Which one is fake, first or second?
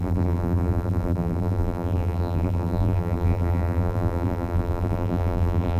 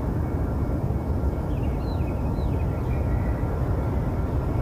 first